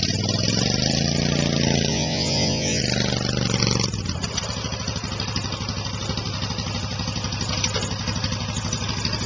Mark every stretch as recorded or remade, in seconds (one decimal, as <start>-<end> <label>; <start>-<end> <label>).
0.0-1.9 recorded; 1.9-2.8 remade; 2.8-9.3 recorded